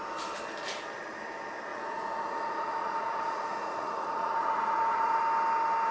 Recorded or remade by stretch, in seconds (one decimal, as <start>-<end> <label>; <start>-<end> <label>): 0.0-1.7 recorded; 1.7-5.2 remade; 5.2-5.9 recorded